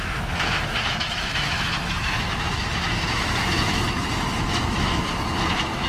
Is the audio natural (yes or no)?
no